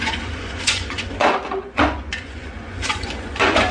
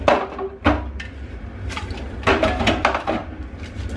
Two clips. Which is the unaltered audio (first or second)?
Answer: second